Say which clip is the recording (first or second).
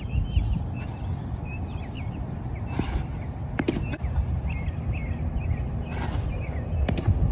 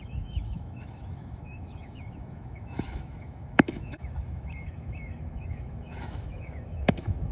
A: first